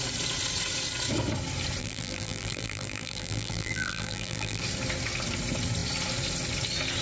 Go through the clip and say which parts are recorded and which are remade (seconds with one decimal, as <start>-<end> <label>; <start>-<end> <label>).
0.0-1.8 recorded; 1.8-4.6 remade; 4.6-7.0 recorded